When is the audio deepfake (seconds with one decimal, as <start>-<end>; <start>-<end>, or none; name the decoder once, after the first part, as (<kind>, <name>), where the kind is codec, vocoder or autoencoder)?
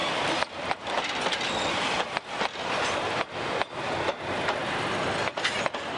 none